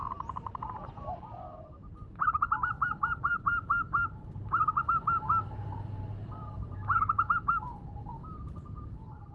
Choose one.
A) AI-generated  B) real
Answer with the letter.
A